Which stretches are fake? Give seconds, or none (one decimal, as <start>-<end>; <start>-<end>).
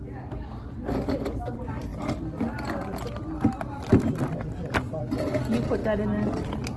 none